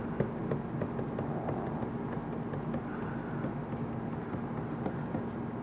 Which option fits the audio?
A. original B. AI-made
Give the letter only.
A